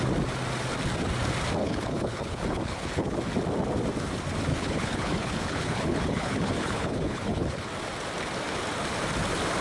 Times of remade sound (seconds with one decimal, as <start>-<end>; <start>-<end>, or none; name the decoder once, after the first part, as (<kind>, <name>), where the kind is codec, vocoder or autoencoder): 1.6-3.2 (codec, HILCodec); 4.5-7.7